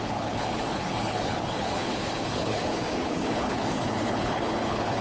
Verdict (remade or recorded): remade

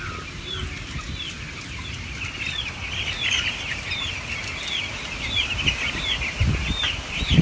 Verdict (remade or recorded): recorded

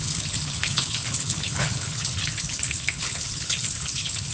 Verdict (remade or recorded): remade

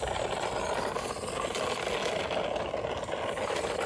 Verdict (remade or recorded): recorded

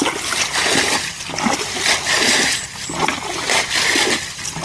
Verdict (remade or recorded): recorded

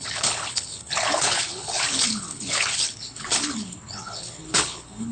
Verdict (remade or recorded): remade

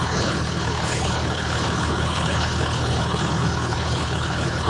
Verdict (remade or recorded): remade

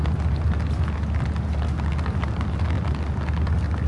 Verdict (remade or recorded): recorded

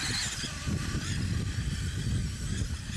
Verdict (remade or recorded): recorded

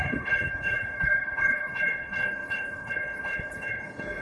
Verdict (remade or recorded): remade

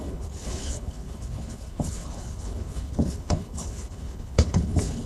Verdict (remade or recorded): remade